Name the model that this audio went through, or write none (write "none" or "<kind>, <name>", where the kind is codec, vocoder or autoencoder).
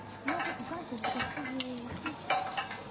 none